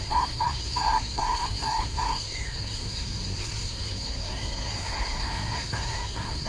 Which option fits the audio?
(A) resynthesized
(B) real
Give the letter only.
A